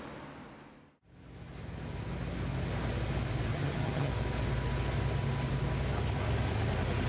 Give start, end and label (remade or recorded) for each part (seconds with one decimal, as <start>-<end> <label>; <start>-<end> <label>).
0.0-3.5 recorded; 3.5-4.1 remade; 4.1-7.1 recorded